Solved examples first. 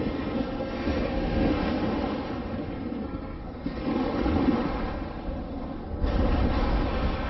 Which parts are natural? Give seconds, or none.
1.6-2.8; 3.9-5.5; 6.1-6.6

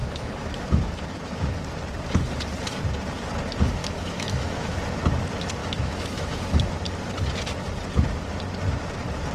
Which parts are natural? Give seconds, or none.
1.6-3.8; 4.8-5.6; 6.7-9.3

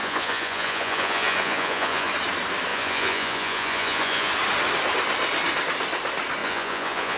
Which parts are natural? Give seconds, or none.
2.1-2.7; 4.3-6.4

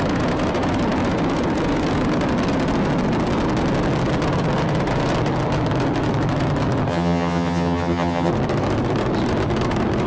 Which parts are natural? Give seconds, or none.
0.0-6.9; 8.3-10.1

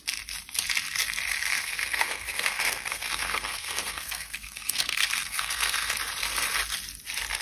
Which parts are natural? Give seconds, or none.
0.0-1.5; 5.9-7.4

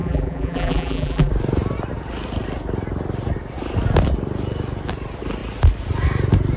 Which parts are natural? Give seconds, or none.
1.3-6.6